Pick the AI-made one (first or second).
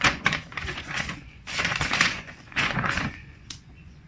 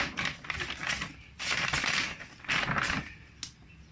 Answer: first